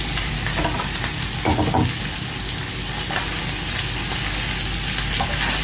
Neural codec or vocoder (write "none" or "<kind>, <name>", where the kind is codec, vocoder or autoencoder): none